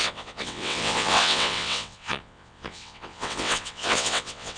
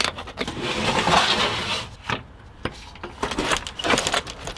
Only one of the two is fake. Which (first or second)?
first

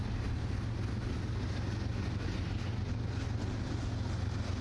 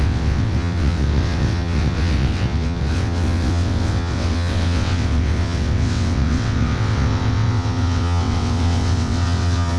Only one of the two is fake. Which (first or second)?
second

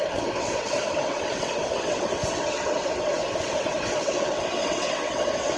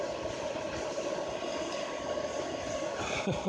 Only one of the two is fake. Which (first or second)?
first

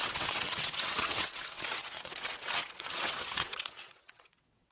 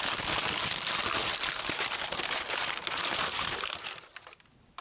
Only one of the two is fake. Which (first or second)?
first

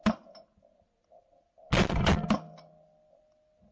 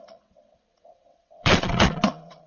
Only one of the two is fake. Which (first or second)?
second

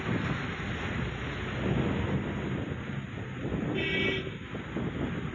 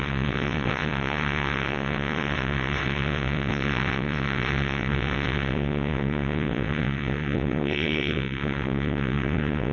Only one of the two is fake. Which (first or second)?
second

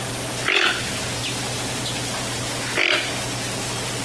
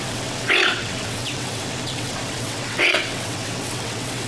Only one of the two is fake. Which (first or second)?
second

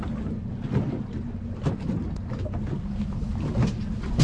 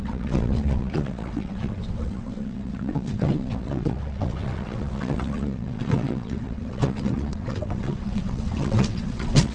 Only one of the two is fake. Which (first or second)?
second